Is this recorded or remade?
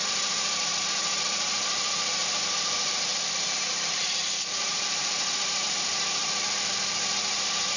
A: remade